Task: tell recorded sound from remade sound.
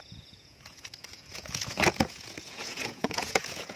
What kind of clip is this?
remade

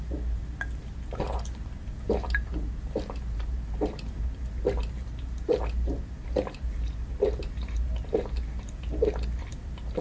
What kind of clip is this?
remade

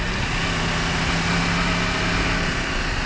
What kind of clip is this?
recorded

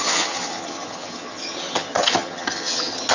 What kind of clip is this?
remade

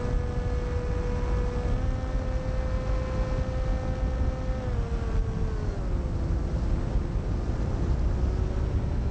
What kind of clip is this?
recorded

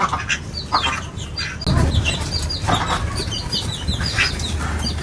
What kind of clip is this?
recorded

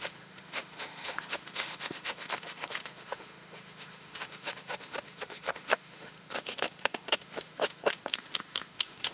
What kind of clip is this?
remade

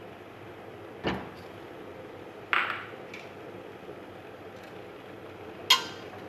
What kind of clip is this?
recorded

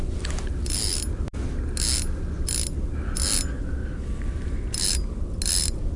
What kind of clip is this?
recorded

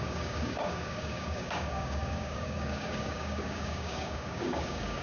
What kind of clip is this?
remade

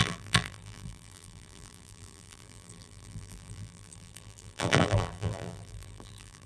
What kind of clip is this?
remade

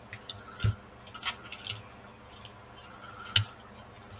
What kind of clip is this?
recorded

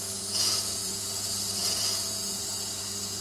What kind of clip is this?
remade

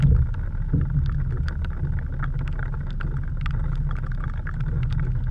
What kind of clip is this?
recorded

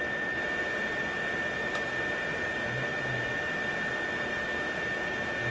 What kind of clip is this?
recorded